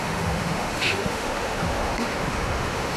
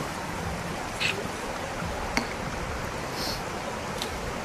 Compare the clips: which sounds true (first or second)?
second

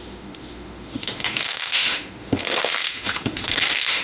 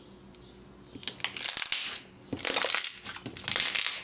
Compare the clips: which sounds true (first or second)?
second